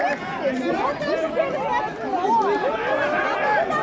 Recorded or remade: recorded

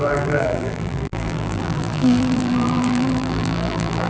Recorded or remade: remade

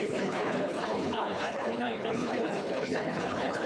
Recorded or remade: remade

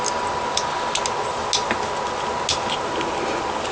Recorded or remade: recorded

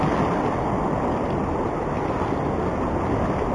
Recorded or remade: recorded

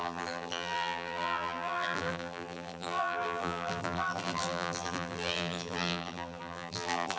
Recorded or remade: remade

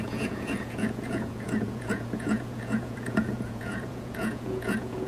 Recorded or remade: remade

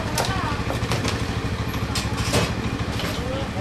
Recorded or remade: recorded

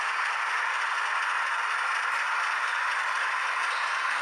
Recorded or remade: recorded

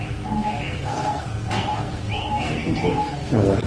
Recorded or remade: remade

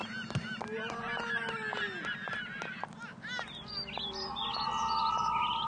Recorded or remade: recorded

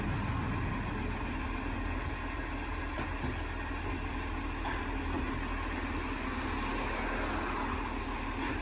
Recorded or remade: recorded